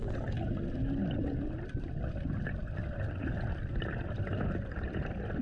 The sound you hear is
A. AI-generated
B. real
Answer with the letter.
A